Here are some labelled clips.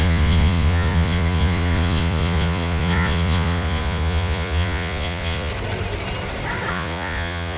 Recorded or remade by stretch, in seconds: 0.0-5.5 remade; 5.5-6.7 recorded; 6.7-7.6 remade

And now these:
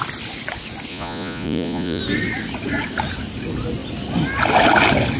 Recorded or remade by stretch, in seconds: 0.0-0.9 recorded; 0.9-2.0 remade; 2.0-5.2 recorded

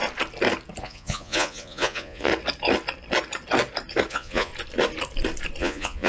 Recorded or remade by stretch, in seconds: 0.0-0.8 recorded; 0.8-2.3 remade; 2.3-4.1 recorded; 4.1-4.5 remade; 4.5-5.6 recorded; 5.6-6.1 remade

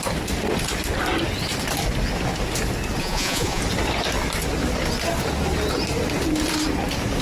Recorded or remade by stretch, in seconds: 0.0-3.0 recorded; 3.0-3.6 remade; 3.6-7.2 recorded